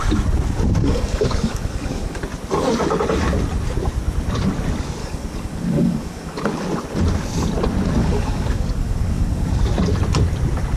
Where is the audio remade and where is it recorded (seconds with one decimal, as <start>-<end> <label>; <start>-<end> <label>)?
0.0-0.8 recorded; 0.8-2.2 remade; 2.2-5.0 recorded; 5.0-6.4 remade; 6.4-8.0 recorded; 8.0-9.6 remade; 9.6-10.8 recorded